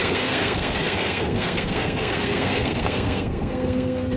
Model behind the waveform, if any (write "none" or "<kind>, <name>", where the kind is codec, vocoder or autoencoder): codec, SNAC